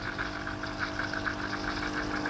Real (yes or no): yes